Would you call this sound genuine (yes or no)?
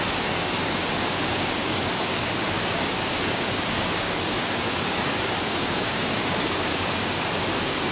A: no